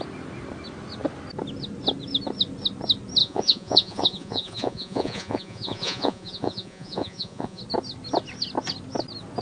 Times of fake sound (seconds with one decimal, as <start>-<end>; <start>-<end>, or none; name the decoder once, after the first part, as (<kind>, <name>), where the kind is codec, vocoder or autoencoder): 3.2-7.6 (vocoder, Vocos)